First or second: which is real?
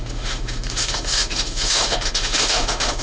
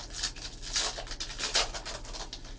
second